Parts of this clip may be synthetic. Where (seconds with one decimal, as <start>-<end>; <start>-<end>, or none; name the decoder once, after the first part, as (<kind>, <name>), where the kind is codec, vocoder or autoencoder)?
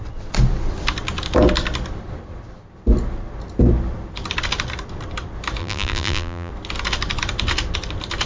5.6-6.5 (vocoder, BigVGAN v2)